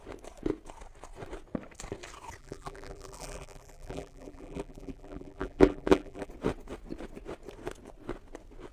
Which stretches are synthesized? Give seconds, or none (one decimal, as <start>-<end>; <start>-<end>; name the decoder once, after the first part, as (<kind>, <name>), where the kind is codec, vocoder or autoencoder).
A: 2.4-6.3 (vocoder, BigVGAN v2)